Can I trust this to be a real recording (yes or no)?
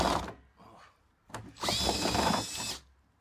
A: yes